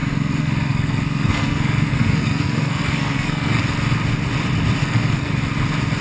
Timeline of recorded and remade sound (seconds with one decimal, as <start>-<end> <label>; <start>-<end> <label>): 0.0-3.6 remade; 3.6-4.8 recorded; 4.8-5.3 remade; 5.3-6.0 recorded